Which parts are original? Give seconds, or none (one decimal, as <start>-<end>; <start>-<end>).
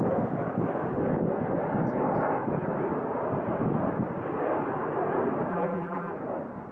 0.0-5.5; 6.1-6.7